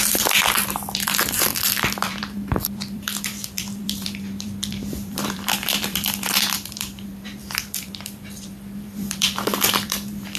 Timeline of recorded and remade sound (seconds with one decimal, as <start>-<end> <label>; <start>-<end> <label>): 0.0-10.4 remade